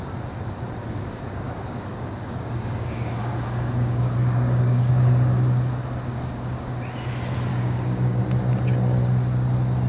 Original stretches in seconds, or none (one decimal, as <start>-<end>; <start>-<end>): 0.0-0.8; 4.9-6.1; 6.7-7.5; 8.2-9.9